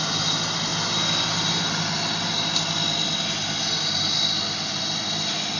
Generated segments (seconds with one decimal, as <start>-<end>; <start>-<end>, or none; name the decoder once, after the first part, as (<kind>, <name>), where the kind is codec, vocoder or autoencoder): none